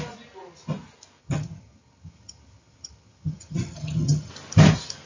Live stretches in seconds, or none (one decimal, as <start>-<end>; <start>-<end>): 0.0-1.2; 4.3-5.1